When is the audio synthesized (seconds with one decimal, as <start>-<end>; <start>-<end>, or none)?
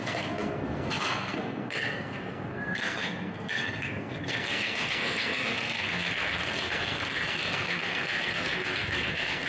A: 0.0-9.5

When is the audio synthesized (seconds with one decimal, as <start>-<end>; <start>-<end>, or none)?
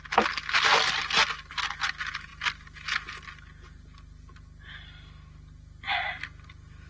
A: none